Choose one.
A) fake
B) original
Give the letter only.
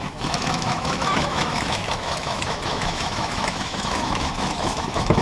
A